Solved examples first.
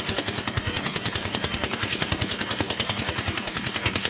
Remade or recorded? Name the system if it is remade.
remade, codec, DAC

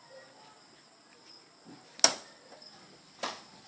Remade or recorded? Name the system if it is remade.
recorded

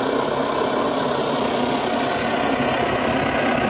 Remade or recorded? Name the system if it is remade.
recorded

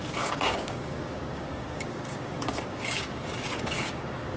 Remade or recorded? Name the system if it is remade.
remade, codec, DAC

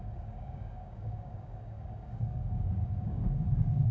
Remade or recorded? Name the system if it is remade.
remade, codec, DAC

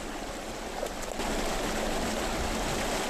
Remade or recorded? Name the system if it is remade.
recorded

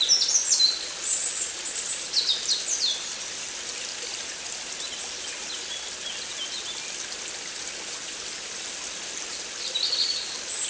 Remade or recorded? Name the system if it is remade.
recorded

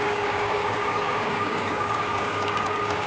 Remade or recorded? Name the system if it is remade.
remade, codec, DAC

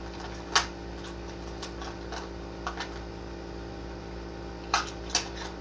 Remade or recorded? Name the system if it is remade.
recorded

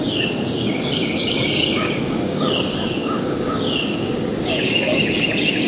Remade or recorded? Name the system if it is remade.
remade, codec, DAC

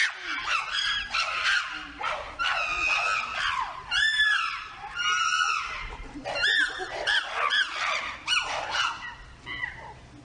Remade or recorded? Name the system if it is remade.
recorded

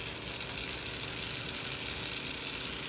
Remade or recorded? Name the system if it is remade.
recorded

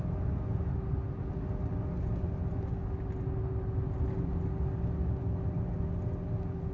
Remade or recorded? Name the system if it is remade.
recorded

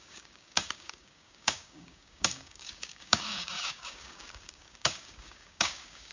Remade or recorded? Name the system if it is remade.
remade, codec, DAC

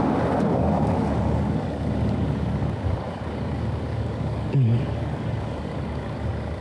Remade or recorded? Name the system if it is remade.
remade, codec, DAC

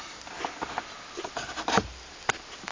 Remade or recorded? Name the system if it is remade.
recorded